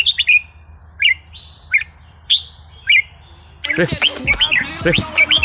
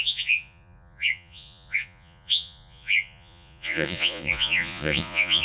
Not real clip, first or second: second